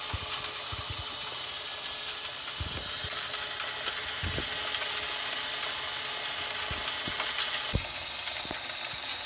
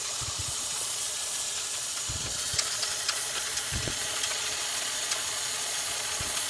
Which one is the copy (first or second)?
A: second